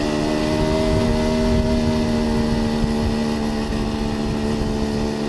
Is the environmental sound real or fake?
real